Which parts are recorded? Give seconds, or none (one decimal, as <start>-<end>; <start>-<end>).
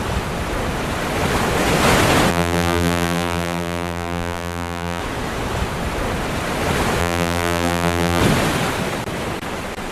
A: 0.0-2.3; 5.0-7.0; 8.2-9.9